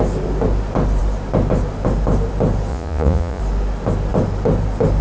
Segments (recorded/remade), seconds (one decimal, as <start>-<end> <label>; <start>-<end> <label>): 0.0-2.7 recorded; 2.7-3.4 remade; 3.4-5.0 recorded